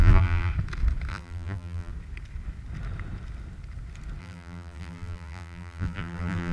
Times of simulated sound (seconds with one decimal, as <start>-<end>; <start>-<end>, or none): 0.0-0.5; 1.1-1.9; 4.2-6.5